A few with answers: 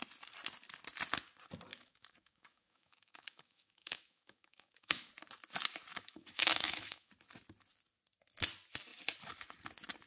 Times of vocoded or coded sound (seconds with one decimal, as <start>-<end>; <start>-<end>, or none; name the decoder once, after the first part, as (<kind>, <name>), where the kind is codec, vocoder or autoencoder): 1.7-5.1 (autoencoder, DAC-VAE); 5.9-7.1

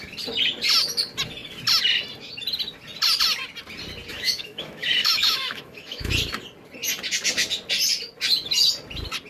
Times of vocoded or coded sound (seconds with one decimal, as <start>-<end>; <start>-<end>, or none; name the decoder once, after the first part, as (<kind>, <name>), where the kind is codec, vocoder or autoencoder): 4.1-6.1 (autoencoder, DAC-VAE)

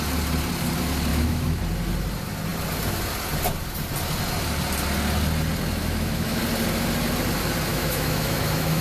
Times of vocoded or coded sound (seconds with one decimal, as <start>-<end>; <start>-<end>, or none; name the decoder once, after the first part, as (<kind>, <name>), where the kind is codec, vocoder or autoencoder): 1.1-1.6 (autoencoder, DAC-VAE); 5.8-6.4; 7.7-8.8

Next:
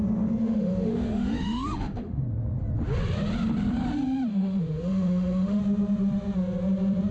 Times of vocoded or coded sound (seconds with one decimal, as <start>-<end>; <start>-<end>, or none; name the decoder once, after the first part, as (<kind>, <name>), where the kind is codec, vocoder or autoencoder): 0.4-2.2 (autoencoder, DAC-VAE); 4.3-5.6

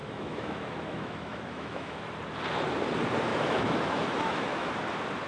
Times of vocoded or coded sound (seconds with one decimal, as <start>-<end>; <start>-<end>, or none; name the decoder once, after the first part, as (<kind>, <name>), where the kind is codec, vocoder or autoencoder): 0.0-2.0 (autoencoder, DAC-VAE); 3.3-4.7

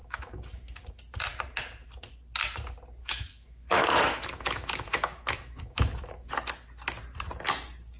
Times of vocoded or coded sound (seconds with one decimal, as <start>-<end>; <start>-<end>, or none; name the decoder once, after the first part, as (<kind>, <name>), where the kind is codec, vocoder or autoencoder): 0.0-0.9 (autoencoder, DAC-VAE); 3.0-6.3